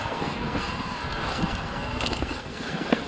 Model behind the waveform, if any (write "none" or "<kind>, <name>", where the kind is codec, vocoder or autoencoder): codec, SNAC